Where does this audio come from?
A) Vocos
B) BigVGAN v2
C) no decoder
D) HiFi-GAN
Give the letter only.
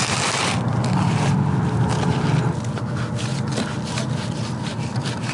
C